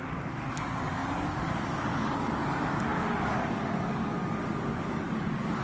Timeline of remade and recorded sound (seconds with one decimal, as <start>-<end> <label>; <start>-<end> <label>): 0.0-5.6 remade